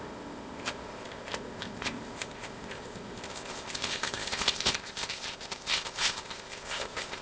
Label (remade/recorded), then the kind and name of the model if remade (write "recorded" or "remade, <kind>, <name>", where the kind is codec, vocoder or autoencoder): remade, codec, ZipCodec